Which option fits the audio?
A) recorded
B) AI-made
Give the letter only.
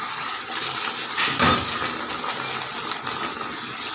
A